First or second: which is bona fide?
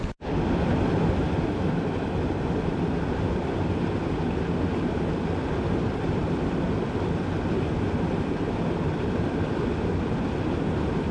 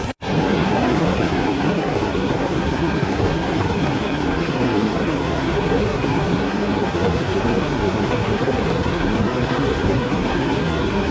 first